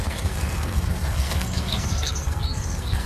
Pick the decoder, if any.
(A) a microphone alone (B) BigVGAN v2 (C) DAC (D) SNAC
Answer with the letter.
D